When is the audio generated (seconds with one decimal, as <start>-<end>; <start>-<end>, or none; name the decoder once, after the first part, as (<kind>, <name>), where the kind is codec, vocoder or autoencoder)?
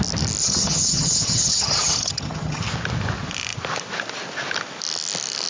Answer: 0.4-2.6 (vocoder, HiFi-GAN)